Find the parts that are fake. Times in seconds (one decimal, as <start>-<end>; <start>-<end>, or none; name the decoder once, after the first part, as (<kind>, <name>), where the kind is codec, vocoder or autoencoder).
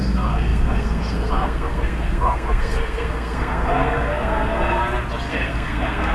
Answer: 0.0-4.8 (codec, SNAC); 5.3-6.1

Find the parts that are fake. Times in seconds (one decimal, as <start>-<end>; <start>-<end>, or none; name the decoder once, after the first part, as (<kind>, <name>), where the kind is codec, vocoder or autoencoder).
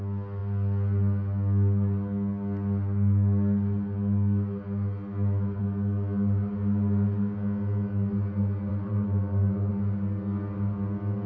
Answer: 8.7-9.7 (vocoder, BigVGAN v2)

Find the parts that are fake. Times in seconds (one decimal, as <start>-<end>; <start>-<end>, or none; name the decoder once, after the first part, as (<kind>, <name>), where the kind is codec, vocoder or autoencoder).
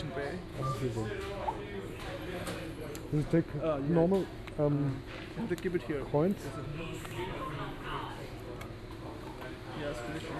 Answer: 0.5-1.6 (autoencoder, DAC-VAE); 6.7-7.5